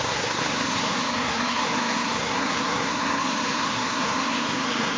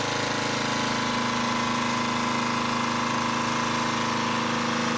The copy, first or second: first